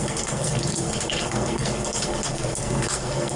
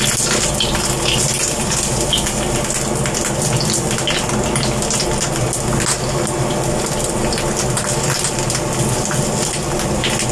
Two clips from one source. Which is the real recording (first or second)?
second